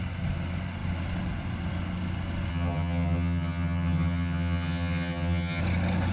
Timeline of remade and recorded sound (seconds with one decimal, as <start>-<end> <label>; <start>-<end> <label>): 0.0-2.5 recorded; 2.5-5.6 remade; 5.6-6.1 recorded